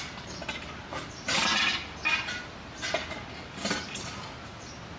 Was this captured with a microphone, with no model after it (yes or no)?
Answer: yes